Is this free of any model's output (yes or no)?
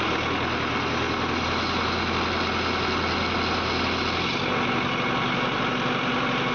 yes